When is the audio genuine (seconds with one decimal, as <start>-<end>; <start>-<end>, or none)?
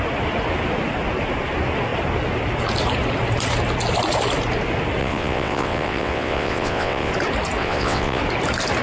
0.0-5.0; 7.1-7.6; 8.2-8.8